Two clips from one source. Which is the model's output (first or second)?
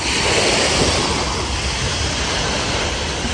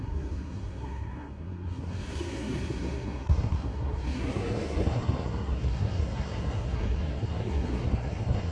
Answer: second